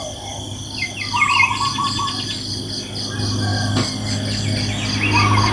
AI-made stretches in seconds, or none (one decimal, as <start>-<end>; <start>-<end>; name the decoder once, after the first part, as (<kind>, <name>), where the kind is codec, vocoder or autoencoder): none